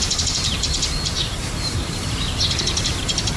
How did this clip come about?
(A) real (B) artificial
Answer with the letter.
B